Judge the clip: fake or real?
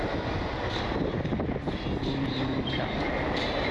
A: real